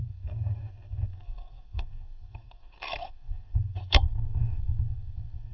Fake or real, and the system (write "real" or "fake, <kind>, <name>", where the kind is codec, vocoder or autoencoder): fake, codec, SNAC